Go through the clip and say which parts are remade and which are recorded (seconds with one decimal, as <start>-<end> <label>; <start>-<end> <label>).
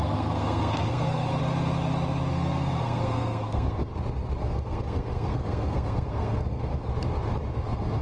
0.0-1.4 remade; 1.4-2.3 recorded; 2.3-3.9 remade; 3.9-4.4 recorded; 4.4-6.9 remade; 6.9-7.5 recorded; 7.5-8.0 remade